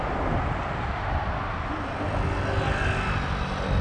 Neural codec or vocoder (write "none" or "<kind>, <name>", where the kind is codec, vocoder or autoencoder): none